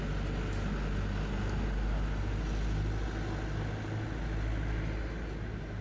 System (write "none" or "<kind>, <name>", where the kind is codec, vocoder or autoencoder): none